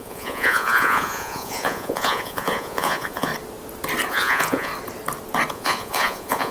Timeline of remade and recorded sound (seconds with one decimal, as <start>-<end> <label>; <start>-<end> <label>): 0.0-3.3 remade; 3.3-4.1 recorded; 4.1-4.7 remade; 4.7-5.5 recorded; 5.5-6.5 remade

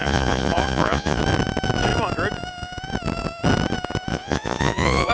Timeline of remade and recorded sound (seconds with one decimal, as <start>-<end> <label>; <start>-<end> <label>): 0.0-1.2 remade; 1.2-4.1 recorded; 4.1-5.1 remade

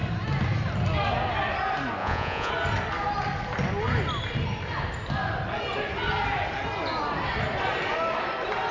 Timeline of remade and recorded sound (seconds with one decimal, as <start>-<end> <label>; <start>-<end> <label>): 0.0-2.0 recorded; 2.0-2.5 remade; 2.5-8.7 recorded

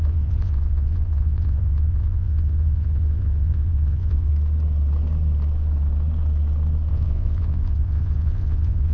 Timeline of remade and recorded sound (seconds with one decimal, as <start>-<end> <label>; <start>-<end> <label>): 0.0-4.3 remade; 4.3-6.9 recorded; 6.9-8.9 remade